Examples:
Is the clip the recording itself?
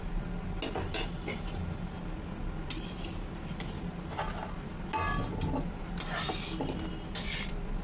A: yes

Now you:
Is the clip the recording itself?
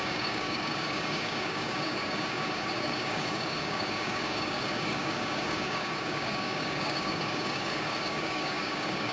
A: no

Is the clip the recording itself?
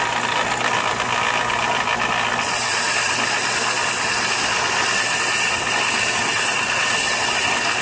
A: yes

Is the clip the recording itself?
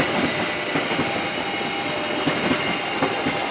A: yes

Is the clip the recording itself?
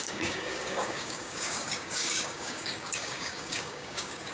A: no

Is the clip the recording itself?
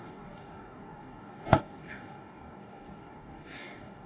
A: no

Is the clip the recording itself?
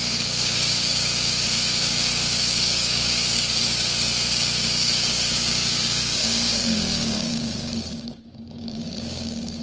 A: no